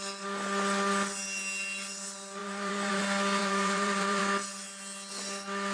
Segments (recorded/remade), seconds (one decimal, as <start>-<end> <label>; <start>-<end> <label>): 0.0-2.4 recorded; 2.4-3.0 remade; 3.0-3.4 recorded; 3.4-4.2 remade; 4.2-5.7 recorded